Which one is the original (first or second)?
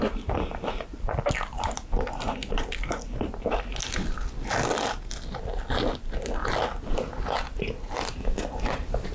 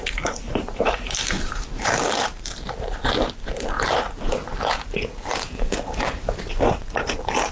first